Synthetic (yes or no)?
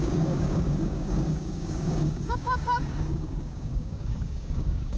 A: yes